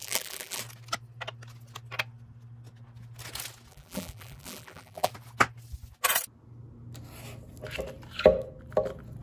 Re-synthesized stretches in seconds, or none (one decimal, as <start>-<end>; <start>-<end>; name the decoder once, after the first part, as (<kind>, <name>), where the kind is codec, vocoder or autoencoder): 0.0-0.6 (vocoder, BigVGAN v2); 3.7-5.1